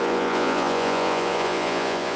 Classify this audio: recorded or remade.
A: remade